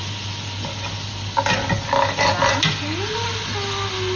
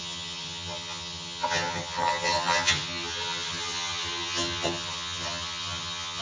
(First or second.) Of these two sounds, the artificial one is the second